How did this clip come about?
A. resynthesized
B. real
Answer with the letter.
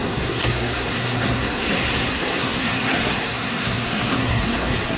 A